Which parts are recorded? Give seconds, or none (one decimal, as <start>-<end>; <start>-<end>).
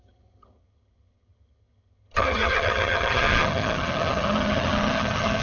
none